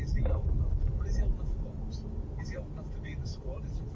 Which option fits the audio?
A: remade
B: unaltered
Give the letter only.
A